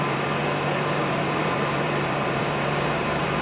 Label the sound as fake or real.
fake